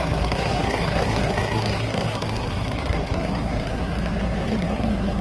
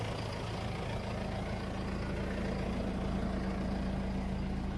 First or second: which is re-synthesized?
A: first